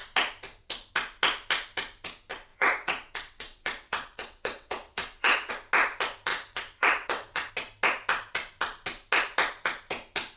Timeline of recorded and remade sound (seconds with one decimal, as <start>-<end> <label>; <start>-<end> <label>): 0.0-2.5 recorded; 2.5-5.5 remade; 5.5-6.3 recorded; 6.3-7.5 remade; 7.5-10.4 recorded